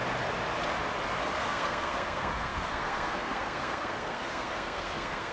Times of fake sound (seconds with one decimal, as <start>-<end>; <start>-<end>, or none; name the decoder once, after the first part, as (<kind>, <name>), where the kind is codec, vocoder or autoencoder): 1.4-5.3 (codec, SNAC)